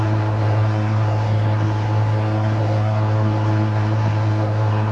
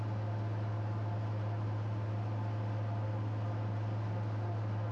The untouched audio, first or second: second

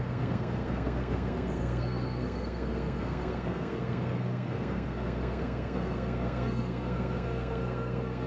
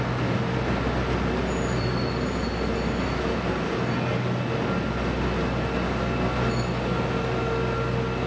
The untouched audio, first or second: second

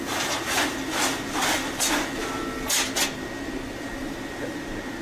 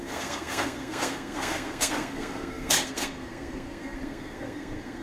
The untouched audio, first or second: first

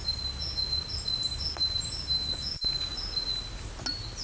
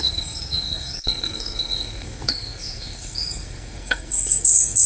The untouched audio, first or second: first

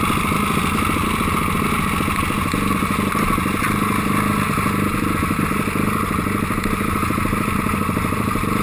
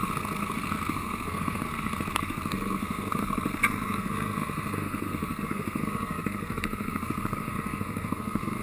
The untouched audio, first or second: first